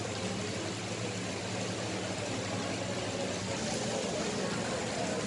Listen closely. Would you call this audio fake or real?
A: real